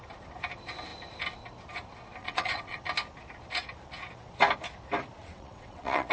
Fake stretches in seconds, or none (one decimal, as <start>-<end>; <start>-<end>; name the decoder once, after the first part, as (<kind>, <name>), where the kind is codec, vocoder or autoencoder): 2.2-2.8 (vocoder, WaveNeXt); 5.2-6.1